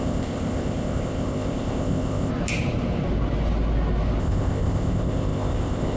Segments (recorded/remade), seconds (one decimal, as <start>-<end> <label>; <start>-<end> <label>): 0.0-2.3 remade; 2.3-4.2 recorded; 4.2-6.0 remade